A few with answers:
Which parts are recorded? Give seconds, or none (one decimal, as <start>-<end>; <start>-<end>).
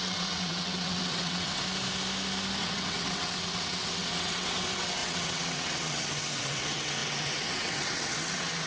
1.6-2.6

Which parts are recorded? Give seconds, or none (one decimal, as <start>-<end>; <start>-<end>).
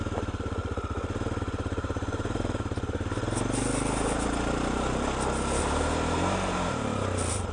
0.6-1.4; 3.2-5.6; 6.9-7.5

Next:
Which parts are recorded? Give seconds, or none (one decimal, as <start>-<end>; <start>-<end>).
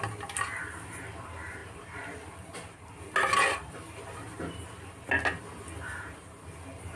0.0-1.6; 2.8-7.0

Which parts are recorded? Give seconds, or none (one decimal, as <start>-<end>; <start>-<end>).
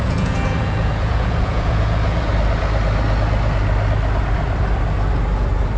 2.3-5.8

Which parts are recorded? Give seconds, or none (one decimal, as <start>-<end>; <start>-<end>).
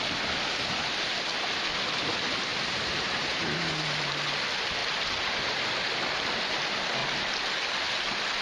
0.0-2.5; 4.0-4.8; 5.6-8.4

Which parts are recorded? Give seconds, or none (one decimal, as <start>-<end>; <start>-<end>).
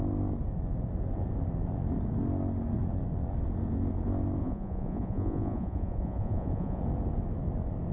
0.0-4.4; 6.8-7.9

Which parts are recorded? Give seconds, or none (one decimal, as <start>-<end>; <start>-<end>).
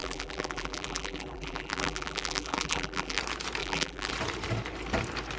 3.2-3.6; 4.1-5.4